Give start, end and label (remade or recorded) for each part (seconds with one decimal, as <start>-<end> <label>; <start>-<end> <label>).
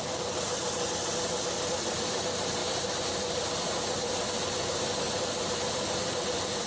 0.0-6.7 recorded